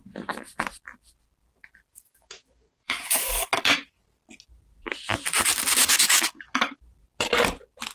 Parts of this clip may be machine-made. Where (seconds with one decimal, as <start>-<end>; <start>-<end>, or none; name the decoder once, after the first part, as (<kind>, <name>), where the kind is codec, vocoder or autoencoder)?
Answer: 1.9-3.8 (codec, DAC); 5.8-6.8